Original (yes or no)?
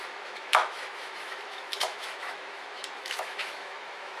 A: no